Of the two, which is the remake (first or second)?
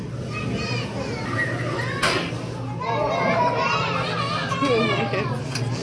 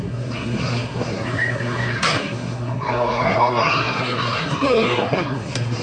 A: second